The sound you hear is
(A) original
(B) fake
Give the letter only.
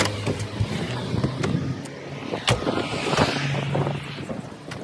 A